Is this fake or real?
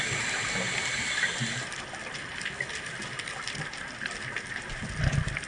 real